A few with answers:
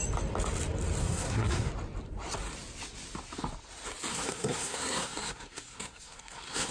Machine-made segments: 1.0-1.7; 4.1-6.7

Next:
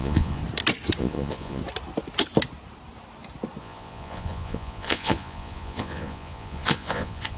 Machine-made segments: 0.0-0.4; 1.0-1.6; 3.6-7.4

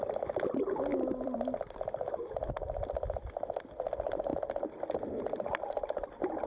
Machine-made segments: 0.0-6.5